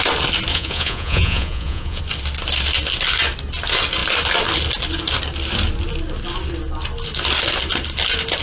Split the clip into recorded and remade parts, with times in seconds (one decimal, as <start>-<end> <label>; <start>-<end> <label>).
0.0-0.5 recorded; 0.5-2.0 remade; 2.0-8.4 recorded